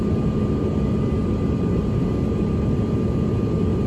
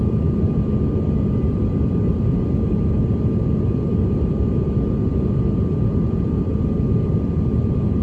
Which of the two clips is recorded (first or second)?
first